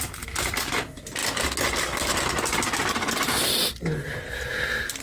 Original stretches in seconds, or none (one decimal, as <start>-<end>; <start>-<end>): 0.0-5.0